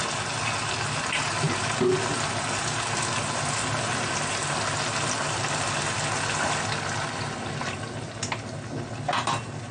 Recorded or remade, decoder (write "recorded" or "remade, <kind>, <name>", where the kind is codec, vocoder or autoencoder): recorded